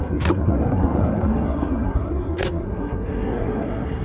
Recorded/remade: remade